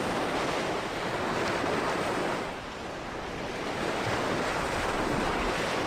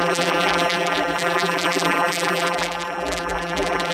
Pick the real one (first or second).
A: first